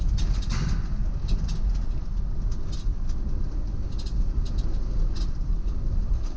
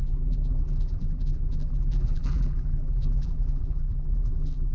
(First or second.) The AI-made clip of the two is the second